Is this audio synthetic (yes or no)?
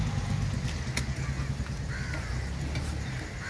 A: no